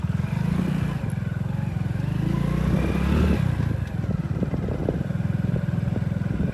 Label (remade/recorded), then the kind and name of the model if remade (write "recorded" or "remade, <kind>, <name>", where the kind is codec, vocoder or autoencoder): recorded